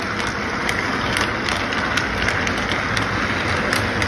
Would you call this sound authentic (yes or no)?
yes